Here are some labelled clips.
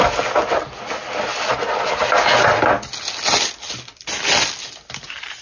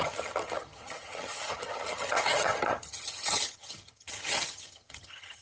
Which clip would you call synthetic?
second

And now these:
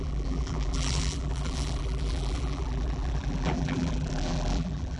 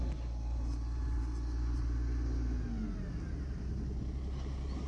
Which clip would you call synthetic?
first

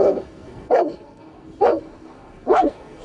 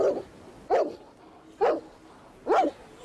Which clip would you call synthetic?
first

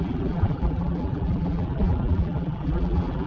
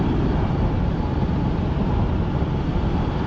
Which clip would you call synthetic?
first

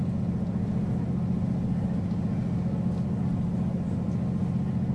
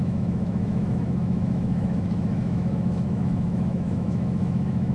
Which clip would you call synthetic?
second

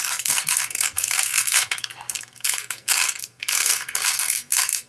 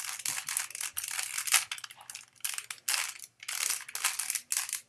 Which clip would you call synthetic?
first